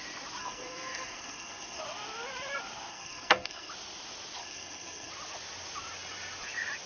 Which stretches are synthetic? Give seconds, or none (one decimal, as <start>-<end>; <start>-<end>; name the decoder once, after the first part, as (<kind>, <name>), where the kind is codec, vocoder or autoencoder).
0.4-1.8 (codec, SNAC); 2.9-3.7; 4.4-5.1